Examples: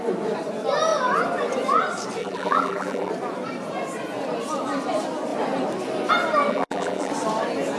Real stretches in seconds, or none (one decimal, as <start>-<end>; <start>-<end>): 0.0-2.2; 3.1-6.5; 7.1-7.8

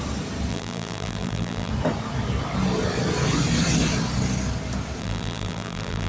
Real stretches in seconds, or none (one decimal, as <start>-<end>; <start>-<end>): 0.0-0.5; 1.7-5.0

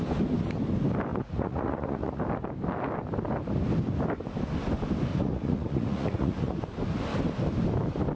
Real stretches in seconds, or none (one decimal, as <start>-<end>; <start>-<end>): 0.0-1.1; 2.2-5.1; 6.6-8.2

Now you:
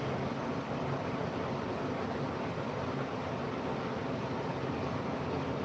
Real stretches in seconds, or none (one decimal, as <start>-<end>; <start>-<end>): 0.0-4.0; 4.7-5.6

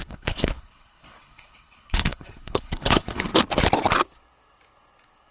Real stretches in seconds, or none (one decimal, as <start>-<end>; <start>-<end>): 3.3-5.3

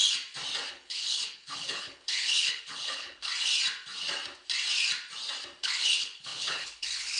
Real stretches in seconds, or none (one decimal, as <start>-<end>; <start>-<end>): 0.0-0.7; 3.3-5.6

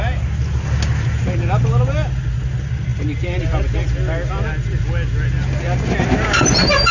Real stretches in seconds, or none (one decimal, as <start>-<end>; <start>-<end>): 0.0-6.9

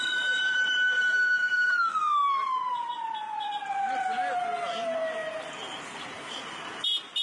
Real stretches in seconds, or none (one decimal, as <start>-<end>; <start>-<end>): 1.1-2.2; 3.5-5.2